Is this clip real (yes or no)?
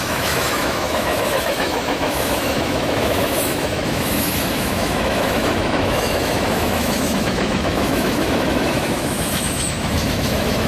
no